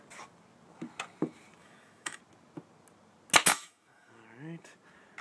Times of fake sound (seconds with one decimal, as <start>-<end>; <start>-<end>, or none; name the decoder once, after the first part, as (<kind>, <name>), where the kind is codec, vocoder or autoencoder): 1.6-2.2 (autoencoder, DAC-VAE); 3.5-4.1